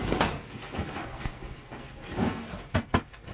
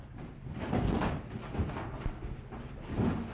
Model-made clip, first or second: first